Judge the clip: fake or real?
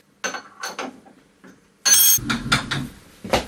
real